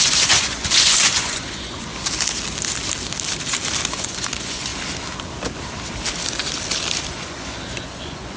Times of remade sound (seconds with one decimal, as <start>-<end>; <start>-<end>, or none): 0.0-1.9; 3.9-4.7; 7.1-8.4